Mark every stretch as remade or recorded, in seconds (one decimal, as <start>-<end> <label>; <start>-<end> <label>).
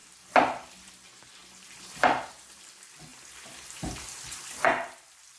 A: 0.0-0.9 remade; 0.9-1.4 recorded; 1.4-2.3 remade; 2.3-3.1 recorded; 3.1-4.6 remade; 4.6-5.4 recorded